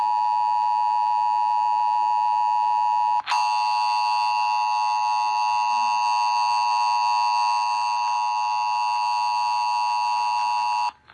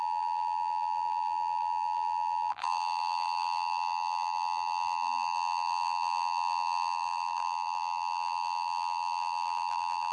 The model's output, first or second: second